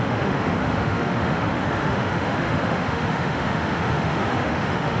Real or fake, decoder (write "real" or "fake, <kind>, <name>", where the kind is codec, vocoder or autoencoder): fake, autoencoder, DAC-VAE